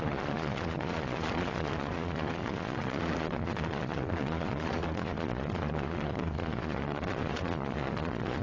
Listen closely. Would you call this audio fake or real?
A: fake